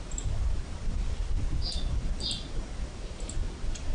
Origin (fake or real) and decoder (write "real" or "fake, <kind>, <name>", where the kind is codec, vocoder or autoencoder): real